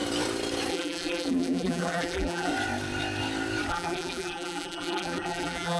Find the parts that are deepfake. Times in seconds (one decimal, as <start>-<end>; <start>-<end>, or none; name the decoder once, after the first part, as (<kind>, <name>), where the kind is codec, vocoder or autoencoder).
0.7-2.5 (vocoder, BigVGAN v2); 3.7-5.8